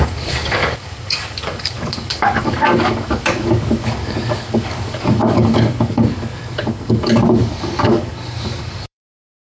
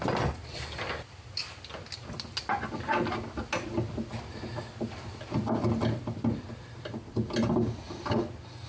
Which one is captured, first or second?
second